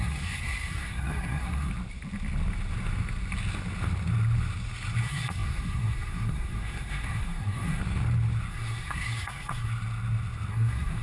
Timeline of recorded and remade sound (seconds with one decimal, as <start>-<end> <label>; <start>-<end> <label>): 0.0-1.7 remade; 1.7-5.0 recorded; 5.0-7.8 remade; 7.8-8.5 recorded; 8.5-9.7 remade; 9.7-10.5 recorded; 10.5-11.0 remade